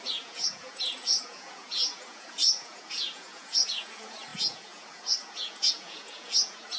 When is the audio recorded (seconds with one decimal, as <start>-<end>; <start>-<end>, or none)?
none